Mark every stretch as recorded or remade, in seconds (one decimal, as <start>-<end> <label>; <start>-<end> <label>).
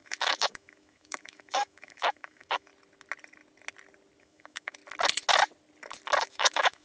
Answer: 0.0-2.7 remade; 2.7-4.2 recorded; 4.2-4.8 remade; 4.8-6.2 recorded; 6.2-6.8 remade